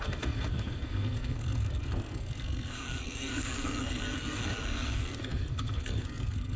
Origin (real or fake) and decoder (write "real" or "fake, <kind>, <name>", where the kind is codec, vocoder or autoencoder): fake, codec, SNAC